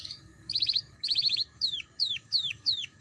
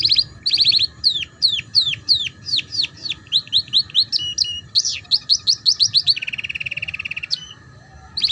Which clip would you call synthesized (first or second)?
first